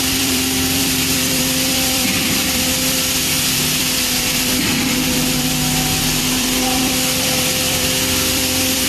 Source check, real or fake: fake